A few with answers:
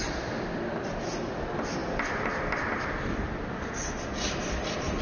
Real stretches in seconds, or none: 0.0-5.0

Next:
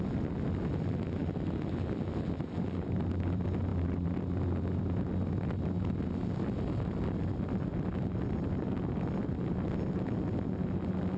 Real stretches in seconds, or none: 0.0-11.2

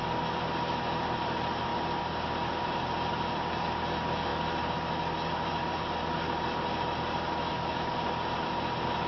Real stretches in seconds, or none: 0.0-9.1

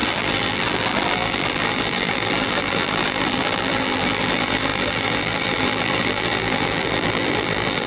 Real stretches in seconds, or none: none

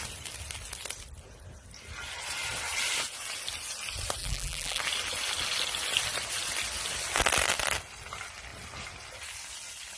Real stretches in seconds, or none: 0.0-4.2; 4.8-10.0

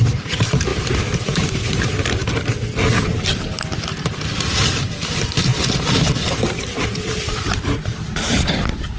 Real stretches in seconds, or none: 2.2-4.5